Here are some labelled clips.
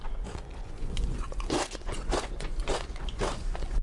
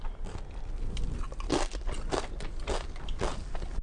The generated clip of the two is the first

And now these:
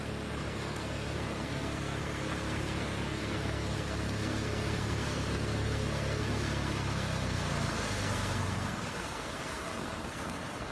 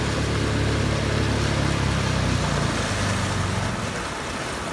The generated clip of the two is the first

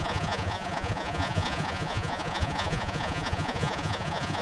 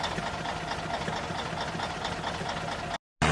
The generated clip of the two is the first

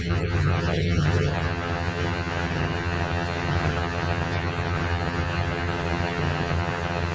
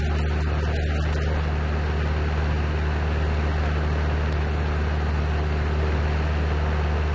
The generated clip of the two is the first